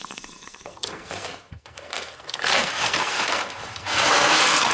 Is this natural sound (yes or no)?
no